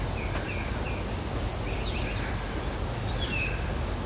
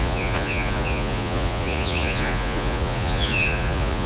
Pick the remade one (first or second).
second